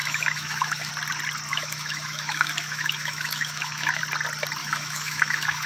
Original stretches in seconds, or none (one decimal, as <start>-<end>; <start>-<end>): 0.9-1.5; 4.0-4.6